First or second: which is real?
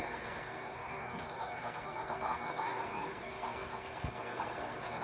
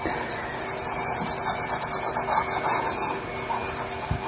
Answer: second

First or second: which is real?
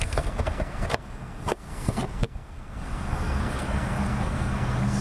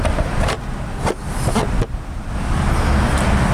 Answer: second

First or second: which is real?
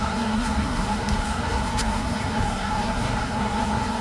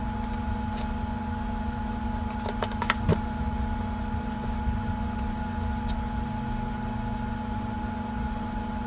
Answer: second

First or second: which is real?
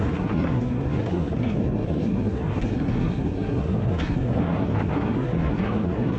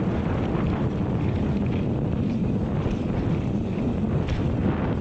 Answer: second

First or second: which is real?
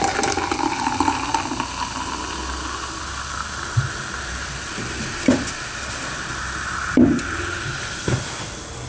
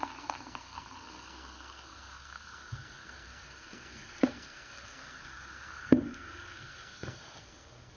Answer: first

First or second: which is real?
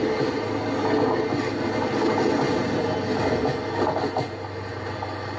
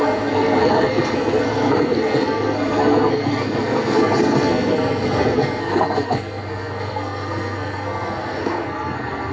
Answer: first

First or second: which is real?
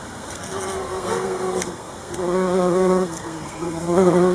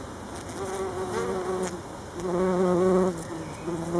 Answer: second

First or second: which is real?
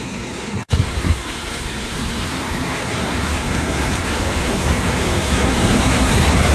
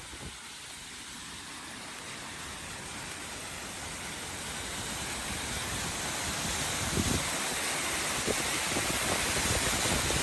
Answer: second